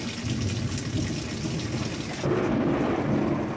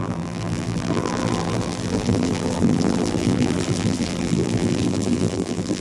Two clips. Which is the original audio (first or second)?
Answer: first